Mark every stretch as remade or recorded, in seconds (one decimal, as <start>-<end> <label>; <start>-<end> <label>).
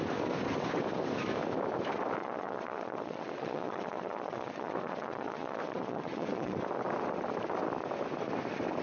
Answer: 0.0-2.2 recorded; 2.2-6.6 remade; 6.6-8.8 recorded